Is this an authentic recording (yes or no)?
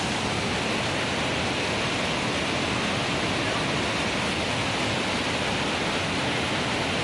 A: yes